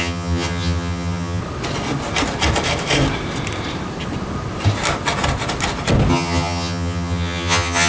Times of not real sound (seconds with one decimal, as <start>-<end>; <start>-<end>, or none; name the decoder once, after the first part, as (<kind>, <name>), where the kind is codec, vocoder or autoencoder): 0.0-1.4 (vocoder, HiFi-GAN); 6.1-7.9